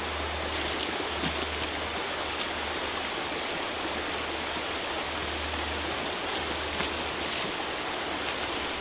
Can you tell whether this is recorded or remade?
recorded